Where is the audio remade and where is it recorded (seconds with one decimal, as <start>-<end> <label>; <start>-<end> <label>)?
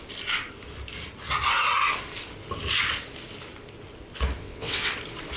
0.0-4.4 recorded; 4.4-4.9 remade; 4.9-5.4 recorded